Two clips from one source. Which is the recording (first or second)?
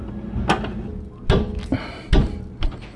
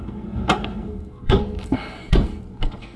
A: first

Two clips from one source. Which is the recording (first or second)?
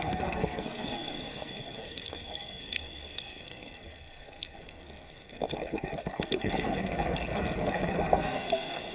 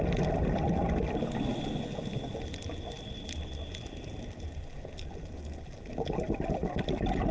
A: second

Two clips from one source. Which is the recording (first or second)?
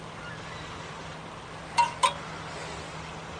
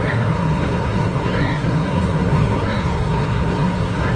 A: first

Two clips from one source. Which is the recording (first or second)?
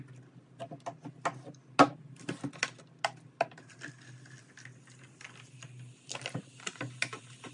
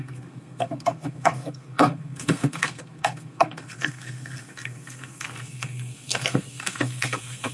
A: first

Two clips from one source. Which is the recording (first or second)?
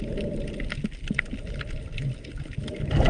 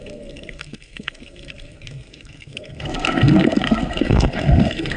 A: first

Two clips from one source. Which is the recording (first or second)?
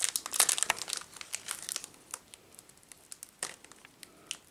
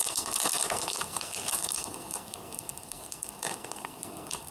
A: first